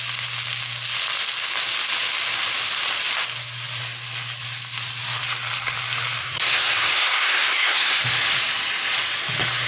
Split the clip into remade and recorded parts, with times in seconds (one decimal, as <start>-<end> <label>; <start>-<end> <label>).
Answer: 0.0-6.2 recorded; 6.2-8.0 remade; 8.0-9.7 recorded